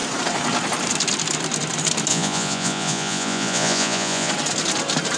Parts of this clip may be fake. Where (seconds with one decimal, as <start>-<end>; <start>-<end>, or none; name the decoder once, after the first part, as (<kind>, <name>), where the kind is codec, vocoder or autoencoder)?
2.1-4.3 (vocoder, Vocos)